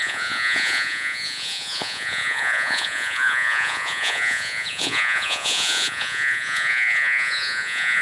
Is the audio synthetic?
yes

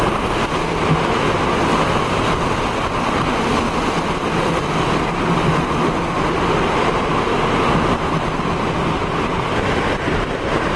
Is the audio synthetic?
no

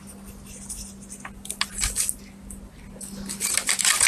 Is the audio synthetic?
no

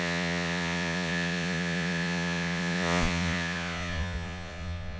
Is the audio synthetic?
yes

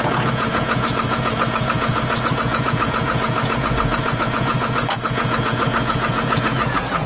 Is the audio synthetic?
yes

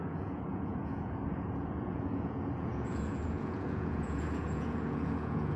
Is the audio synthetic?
yes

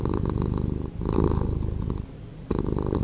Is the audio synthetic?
no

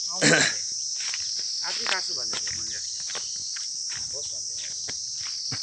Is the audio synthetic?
no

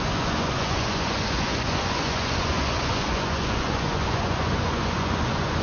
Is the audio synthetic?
yes